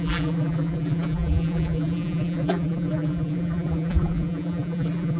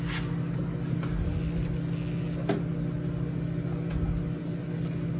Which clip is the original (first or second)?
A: second